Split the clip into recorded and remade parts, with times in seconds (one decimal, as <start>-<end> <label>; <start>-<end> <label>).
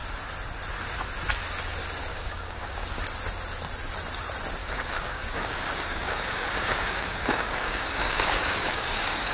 0.0-2.1 recorded; 2.1-2.8 remade; 2.8-4.6 recorded; 4.6-9.3 remade